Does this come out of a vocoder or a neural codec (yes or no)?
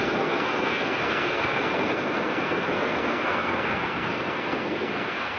yes